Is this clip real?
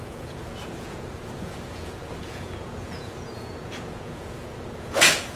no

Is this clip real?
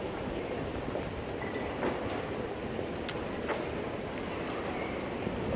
yes